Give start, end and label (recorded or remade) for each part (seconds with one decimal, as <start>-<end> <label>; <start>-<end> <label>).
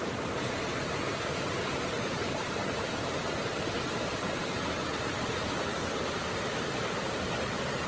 0.0-5.8 remade; 5.8-6.6 recorded; 6.6-7.9 remade